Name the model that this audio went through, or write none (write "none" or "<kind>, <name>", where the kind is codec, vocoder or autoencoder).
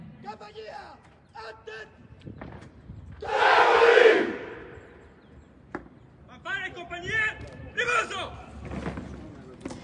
none